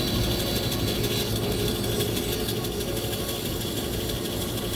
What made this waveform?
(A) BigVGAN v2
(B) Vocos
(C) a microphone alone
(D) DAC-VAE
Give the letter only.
C